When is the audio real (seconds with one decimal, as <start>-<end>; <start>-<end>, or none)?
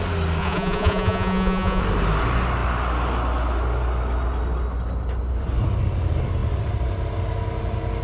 0.0-0.4; 1.8-8.0